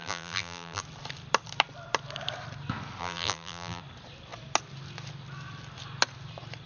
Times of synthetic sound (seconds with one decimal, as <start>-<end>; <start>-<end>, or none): 0.0-0.8; 3.0-3.8